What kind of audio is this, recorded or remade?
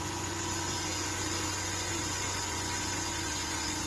remade